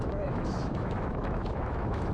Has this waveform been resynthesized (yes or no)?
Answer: yes